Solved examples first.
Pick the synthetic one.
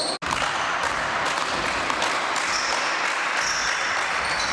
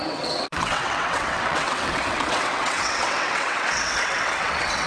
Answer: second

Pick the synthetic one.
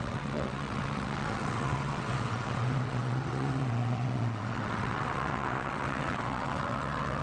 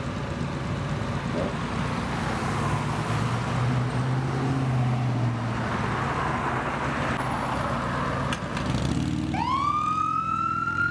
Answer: first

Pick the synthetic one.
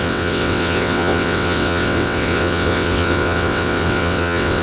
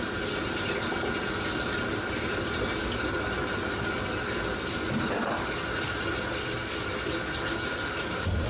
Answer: first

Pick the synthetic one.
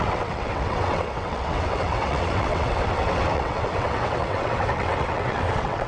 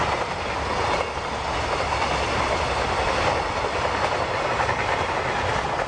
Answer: first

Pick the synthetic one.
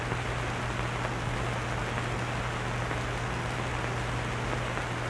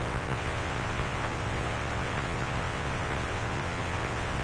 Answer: second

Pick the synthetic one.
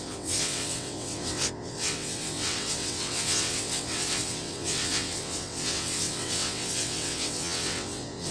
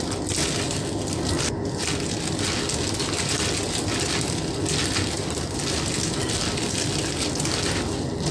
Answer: first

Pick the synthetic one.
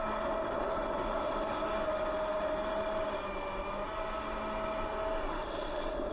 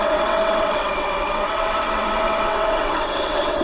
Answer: second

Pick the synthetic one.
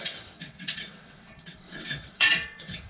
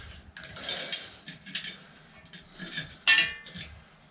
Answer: first